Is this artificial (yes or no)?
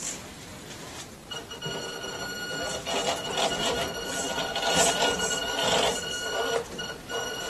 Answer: no